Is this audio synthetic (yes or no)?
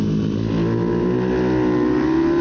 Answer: no